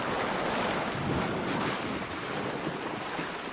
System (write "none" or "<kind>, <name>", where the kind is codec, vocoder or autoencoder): none